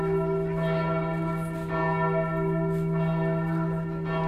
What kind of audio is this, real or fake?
real